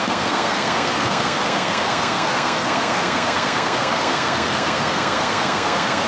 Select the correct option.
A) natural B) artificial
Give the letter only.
B